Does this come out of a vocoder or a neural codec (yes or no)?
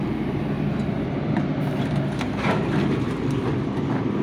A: yes